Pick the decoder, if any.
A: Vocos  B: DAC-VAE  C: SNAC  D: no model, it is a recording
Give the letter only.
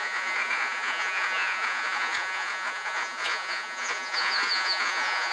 A